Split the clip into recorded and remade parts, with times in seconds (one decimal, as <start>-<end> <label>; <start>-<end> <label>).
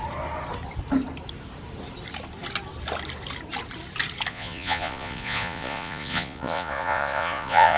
0.0-4.3 recorded; 4.3-7.8 remade